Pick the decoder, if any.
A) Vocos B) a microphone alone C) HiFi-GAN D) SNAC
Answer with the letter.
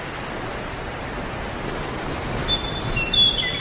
B